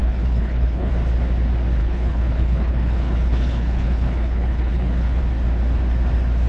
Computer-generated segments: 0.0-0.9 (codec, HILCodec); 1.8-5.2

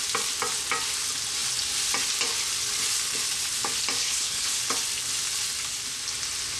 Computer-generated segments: 4.0-4.6 (codec, HILCodec)

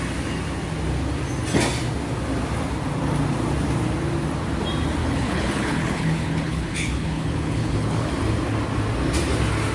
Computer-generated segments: 5.0-8.1 (codec, HILCodec)

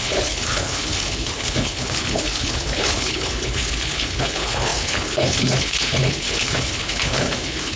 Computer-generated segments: 0.0-7.8 (codec, HILCodec)

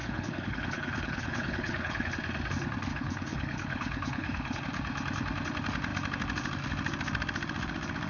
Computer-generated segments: 0.0-2.1 (codec, HILCodec); 2.9-4.6